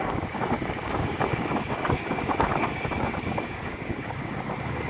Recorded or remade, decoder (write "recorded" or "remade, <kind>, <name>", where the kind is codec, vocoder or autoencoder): remade, codec, DAC